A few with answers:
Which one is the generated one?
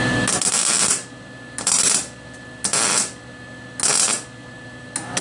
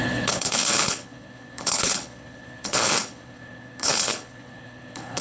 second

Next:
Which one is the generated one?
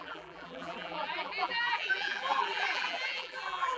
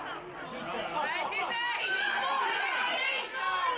first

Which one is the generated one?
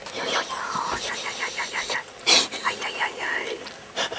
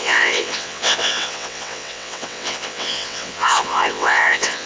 second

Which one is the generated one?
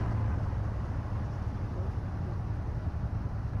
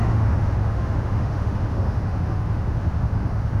second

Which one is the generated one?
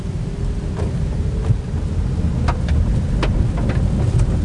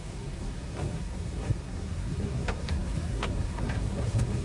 second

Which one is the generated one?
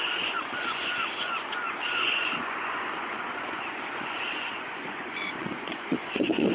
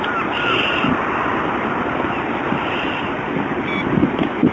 first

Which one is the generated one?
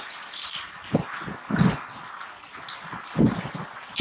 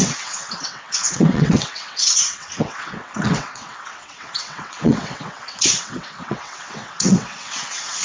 second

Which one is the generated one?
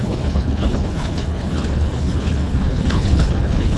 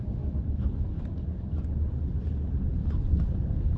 first